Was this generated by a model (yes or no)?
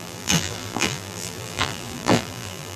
yes